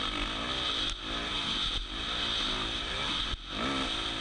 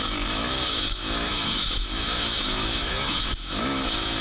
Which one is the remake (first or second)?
second